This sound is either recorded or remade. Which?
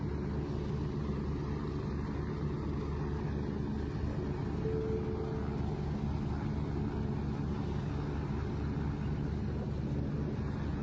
recorded